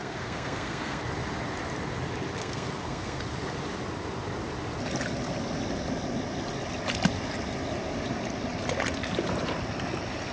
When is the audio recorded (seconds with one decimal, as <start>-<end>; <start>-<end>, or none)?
1.0-2.4; 3.2-10.3